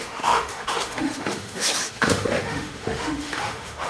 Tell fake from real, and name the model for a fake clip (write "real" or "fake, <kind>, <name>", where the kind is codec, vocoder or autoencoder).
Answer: fake, autoencoder, DAC-VAE